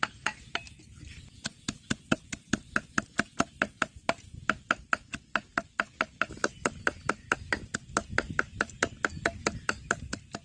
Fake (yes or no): no